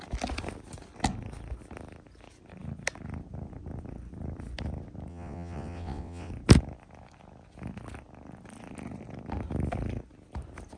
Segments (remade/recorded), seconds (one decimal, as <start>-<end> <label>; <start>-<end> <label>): 0.0-5.1 recorded; 5.1-6.3 remade; 6.3-10.8 recorded